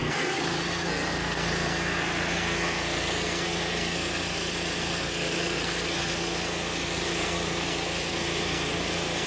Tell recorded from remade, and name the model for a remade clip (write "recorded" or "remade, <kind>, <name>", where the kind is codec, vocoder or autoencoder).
remade, codec, SNAC